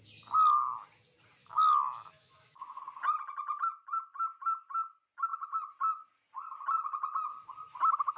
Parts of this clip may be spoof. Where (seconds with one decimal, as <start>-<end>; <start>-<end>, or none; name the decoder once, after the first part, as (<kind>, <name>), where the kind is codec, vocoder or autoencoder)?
1.4-2.8 (autoencoder, DAC-VAE)